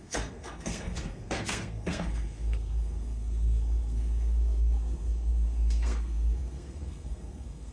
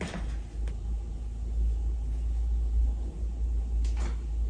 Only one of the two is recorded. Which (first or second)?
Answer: second